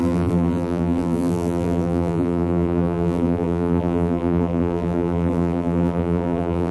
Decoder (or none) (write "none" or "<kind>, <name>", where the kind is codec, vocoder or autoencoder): vocoder, BigVGAN v2